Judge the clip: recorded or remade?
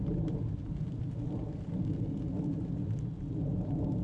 recorded